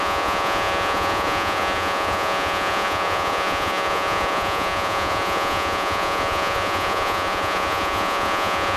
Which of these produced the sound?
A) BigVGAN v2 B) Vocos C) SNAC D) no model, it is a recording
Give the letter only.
B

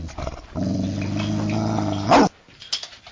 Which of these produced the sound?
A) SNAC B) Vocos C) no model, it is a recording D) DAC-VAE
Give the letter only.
C